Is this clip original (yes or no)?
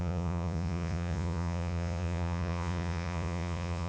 no